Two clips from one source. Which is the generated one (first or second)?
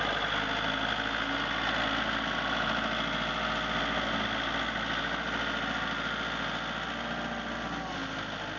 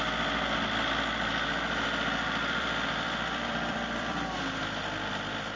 second